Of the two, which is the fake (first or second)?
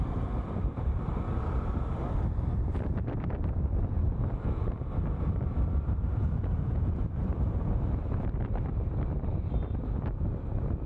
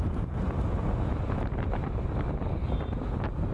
first